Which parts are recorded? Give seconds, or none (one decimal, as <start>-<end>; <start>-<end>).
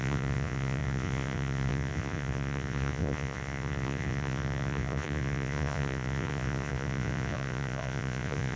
none